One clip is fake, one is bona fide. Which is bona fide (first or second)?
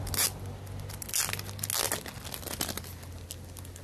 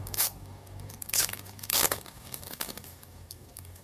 first